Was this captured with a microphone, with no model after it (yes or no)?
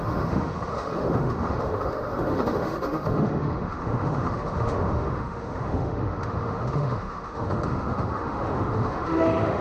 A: no